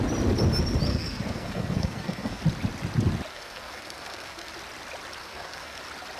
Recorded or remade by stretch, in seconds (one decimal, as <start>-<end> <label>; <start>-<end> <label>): 0.0-0.9 recorded; 0.9-2.4 remade; 2.4-3.3 recorded; 3.3-4.5 remade; 4.5-5.2 recorded; 5.2-5.8 remade; 5.8-6.2 recorded